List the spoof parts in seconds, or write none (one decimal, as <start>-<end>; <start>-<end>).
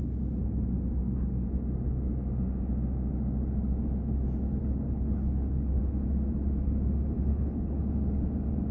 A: 4.6-5.8; 7.3-7.9